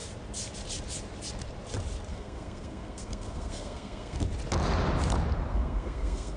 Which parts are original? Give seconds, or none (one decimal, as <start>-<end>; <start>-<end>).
0.0-2.1; 4.2-5.5